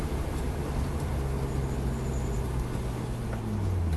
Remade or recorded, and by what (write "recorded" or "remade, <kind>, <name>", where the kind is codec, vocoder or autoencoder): recorded